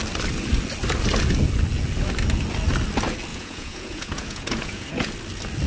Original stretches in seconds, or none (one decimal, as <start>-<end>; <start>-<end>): 0.0-3.3; 5.1-5.7